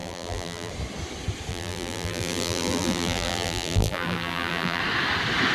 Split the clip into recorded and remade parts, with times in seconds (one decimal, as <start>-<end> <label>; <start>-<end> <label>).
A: 0.0-0.7 remade; 0.7-1.5 recorded; 1.5-4.8 remade; 4.8-5.5 recorded